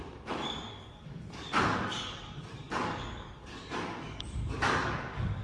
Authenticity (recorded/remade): remade